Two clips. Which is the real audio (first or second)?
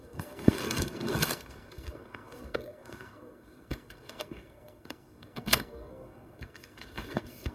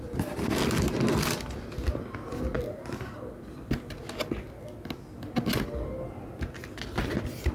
second